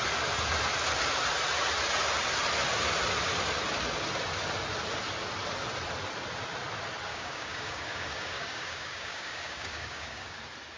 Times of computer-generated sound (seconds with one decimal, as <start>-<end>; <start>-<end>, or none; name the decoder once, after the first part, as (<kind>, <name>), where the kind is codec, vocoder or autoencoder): 7.1-10.4 (codec, DAC)